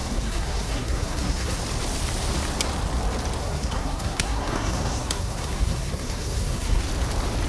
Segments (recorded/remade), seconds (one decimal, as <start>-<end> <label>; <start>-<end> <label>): 0.0-1.6 remade; 1.6-3.4 recorded; 3.4-6.8 remade; 6.8-7.5 recorded

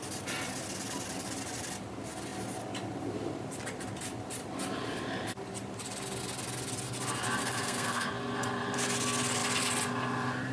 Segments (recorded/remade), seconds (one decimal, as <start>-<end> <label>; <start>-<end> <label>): 0.0-7.4 recorded; 7.4-8.1 remade; 8.1-10.5 recorded

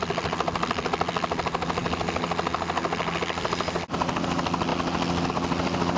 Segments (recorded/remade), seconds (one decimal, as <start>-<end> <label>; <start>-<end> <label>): 0.0-6.0 recorded

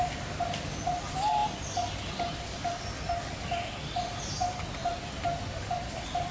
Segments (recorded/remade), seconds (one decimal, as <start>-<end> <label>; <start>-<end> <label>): 0.0-6.3 recorded

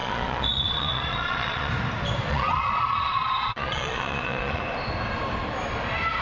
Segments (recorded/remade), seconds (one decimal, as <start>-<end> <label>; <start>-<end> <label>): 0.0-1.7 remade; 1.7-2.3 recorded; 2.3-4.6 remade; 4.6-6.2 recorded

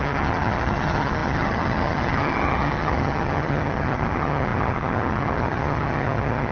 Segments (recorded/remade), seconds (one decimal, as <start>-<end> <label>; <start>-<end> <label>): 0.0-6.5 remade

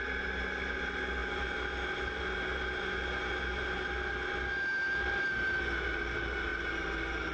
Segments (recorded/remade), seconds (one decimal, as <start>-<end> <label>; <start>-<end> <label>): 0.0-7.3 recorded